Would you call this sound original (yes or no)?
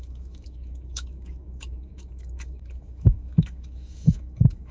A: no